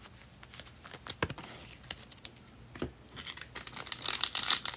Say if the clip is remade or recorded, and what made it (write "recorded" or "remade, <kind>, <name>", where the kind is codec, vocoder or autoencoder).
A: recorded